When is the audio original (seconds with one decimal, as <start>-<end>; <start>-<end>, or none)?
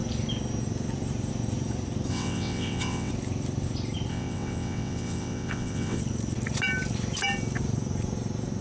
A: 0.0-2.1; 3.1-4.1; 6.0-8.6